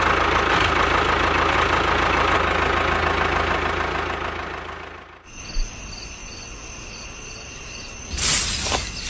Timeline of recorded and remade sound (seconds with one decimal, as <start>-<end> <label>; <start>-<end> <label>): 0.0-9.1 recorded